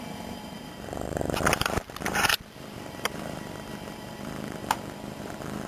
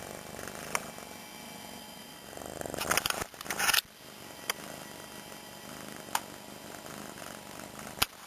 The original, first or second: second